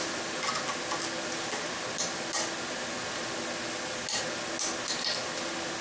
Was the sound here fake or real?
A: real